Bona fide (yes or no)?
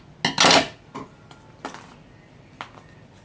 yes